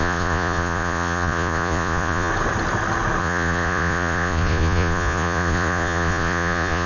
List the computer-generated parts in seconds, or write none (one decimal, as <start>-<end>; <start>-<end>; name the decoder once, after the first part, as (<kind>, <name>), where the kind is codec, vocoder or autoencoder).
0.0-2.3 (vocoder, Vocos); 3.2-6.9